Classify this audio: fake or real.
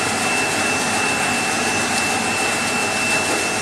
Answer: real